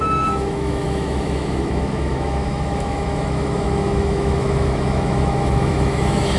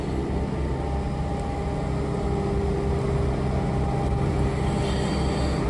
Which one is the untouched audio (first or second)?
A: second